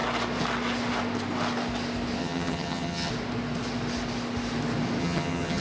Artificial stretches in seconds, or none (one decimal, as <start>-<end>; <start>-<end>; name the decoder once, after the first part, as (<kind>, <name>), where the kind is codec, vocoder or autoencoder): 2.2-3.1 (vocoder, HiFi-GAN); 5.0-5.6

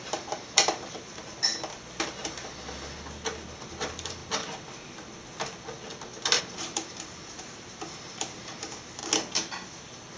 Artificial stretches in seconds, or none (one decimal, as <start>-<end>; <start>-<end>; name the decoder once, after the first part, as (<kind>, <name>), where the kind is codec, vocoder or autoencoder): 0.0-1.5 (vocoder, BigVGAN v2); 3.6-4.2; 6.4-9.0

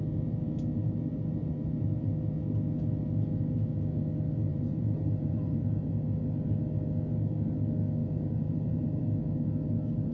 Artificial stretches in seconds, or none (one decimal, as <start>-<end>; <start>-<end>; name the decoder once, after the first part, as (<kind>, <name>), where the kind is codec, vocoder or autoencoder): 0.8-2.1 (vocoder, BigVGAN v2); 4.5-5.9; 8.0-9.0

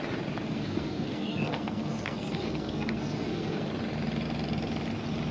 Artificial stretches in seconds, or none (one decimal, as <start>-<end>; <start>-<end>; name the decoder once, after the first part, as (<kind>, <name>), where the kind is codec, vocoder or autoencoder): 0.5-3.7 (codec, SNAC)

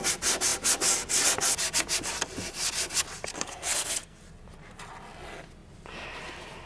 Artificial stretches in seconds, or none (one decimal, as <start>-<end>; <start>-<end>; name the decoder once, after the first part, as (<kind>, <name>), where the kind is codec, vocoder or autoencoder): 3.3-4.2 (codec, SNAC)